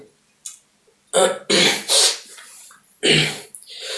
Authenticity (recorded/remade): recorded